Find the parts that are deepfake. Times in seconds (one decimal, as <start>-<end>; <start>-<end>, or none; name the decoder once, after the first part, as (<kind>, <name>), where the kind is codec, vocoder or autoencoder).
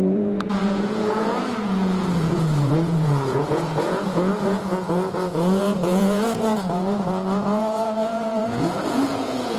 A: 0.0-9.6 (vocoder, Vocos)